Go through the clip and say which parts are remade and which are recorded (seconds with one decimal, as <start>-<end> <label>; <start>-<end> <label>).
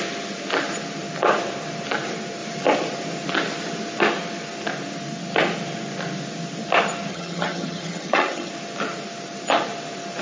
0.0-7.1 recorded; 7.1-8.5 remade; 8.5-10.2 recorded